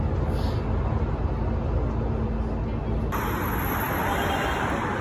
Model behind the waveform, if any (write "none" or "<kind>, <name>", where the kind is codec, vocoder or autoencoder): none